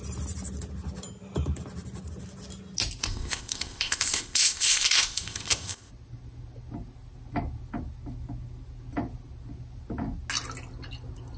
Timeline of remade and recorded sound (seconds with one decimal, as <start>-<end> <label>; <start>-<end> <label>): 0.0-3.0 recorded; 3.0-5.9 remade; 5.9-11.4 recorded